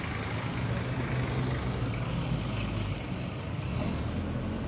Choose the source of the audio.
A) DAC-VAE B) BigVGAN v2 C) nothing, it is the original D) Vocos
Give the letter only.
C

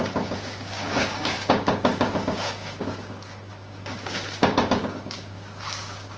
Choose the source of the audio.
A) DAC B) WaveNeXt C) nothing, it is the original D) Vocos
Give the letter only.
A